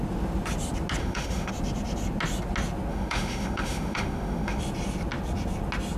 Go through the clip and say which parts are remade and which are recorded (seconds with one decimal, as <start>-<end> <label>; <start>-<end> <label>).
0.0-1.0 recorded; 1.0-1.5 remade; 1.5-2.9 recorded; 2.9-4.6 remade; 4.6-6.0 recorded